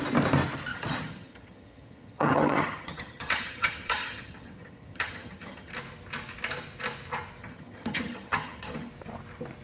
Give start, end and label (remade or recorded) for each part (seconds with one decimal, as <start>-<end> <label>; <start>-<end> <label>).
0.0-0.7 recorded; 0.7-5.7 remade; 5.7-7.4 recorded; 7.4-8.9 remade; 8.9-9.6 recorded